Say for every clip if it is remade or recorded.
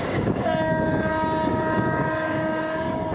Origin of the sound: remade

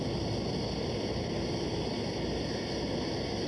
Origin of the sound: recorded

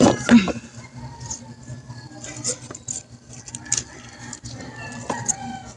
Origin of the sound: recorded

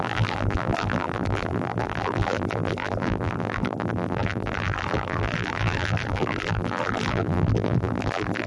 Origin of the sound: remade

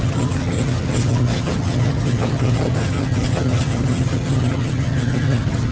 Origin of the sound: remade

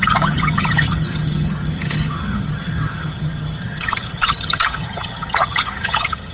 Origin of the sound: remade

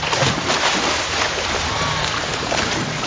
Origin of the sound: remade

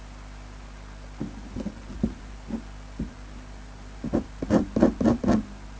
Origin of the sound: recorded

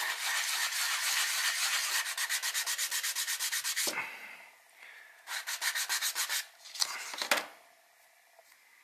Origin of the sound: recorded